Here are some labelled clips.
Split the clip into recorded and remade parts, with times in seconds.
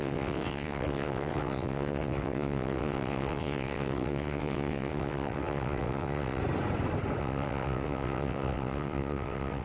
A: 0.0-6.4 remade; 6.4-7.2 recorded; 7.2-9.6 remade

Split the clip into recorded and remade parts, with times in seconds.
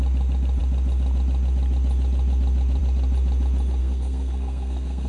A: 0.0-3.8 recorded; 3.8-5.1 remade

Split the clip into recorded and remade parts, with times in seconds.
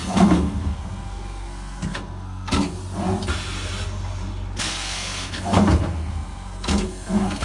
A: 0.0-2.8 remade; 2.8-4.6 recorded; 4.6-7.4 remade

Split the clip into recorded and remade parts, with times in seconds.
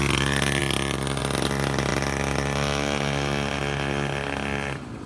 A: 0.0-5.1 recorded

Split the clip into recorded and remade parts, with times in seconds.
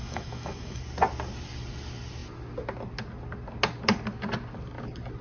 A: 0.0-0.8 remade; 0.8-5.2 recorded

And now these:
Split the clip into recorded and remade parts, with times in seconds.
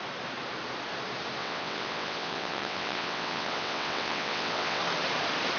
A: 0.0-1.4 recorded; 1.4-4.8 remade; 4.8-5.6 recorded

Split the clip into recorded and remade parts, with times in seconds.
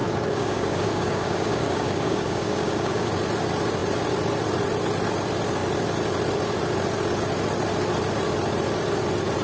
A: 0.0-3.1 remade; 3.1-9.4 recorded